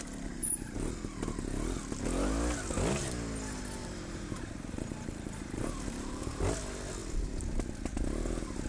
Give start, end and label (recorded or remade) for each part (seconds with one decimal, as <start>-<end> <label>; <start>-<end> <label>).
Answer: 0.0-0.4 recorded; 0.4-0.9 remade; 0.9-3.8 recorded; 3.8-6.4 remade; 6.4-8.7 recorded

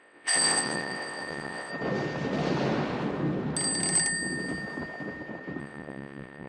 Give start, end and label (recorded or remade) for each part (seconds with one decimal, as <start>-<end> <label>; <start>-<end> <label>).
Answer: 0.0-1.7 remade; 1.7-5.6 recorded; 5.6-6.5 remade

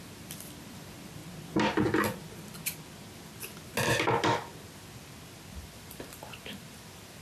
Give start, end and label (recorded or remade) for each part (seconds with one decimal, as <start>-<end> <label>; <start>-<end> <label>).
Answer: 0.0-1.2 remade; 1.2-5.5 recorded; 5.5-7.2 remade

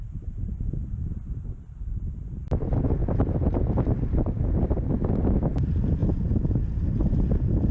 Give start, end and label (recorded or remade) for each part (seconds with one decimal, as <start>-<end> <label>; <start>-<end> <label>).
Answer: 0.0-3.0 recorded; 3.0-4.9 remade; 4.9-6.0 recorded; 6.0-7.3 remade; 7.3-7.7 recorded

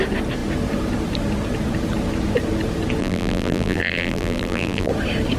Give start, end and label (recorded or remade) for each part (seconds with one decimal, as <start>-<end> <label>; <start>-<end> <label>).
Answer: 0.0-3.0 recorded; 3.0-4.9 remade; 4.9-5.4 recorded

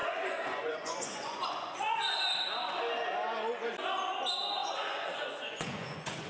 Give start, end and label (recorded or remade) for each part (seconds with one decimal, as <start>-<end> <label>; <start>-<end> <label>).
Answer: 0.0-2.2 remade; 2.2-4.6 recorded; 4.6-6.3 remade